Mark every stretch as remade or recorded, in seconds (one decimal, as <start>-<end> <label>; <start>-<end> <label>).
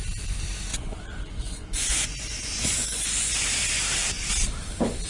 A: 0.0-0.7 recorded; 0.7-3.8 remade; 3.8-5.1 recorded